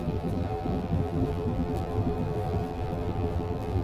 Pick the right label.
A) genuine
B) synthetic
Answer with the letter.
B